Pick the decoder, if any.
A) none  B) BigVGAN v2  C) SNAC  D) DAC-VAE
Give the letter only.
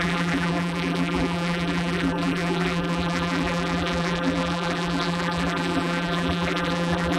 B